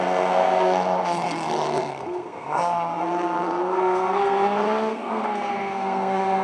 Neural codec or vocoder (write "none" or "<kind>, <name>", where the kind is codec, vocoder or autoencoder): codec, SNAC